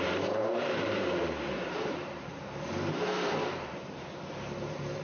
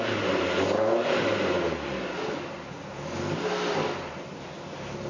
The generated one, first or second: first